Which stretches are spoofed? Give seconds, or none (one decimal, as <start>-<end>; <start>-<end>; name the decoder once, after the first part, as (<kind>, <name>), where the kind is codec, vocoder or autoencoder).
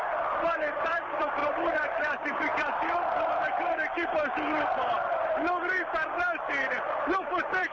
0.0-1.4 (vocoder, BigVGAN v2); 2.0-2.5; 7.1-7.7